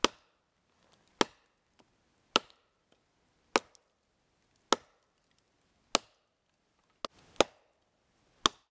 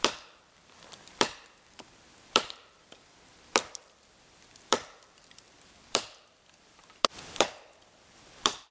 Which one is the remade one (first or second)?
second